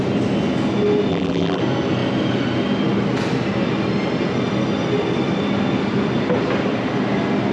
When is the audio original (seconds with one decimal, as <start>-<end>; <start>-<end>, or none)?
0.0-1.1; 1.6-7.5

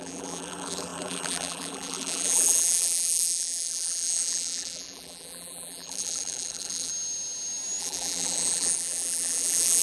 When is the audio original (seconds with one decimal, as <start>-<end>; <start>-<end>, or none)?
6.9-7.8